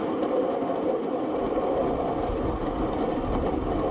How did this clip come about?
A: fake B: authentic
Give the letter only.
B